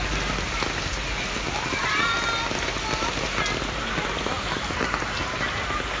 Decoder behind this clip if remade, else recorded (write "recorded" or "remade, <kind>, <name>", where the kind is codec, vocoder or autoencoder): recorded